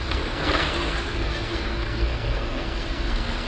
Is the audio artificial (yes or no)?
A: yes